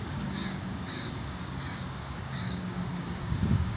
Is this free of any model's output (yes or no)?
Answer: no